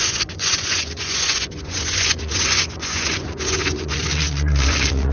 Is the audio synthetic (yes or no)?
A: yes